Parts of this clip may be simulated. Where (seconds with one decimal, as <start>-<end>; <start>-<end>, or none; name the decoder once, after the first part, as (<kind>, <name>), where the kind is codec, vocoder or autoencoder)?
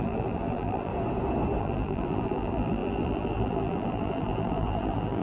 0.0-0.9 (vocoder, BigVGAN v2); 1.6-5.2